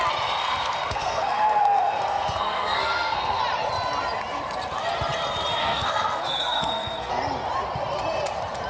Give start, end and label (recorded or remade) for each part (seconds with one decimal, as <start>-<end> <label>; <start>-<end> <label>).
0.0-0.4 recorded; 0.4-3.4 remade; 3.4-5.6 recorded; 5.6-7.1 remade; 7.1-8.7 recorded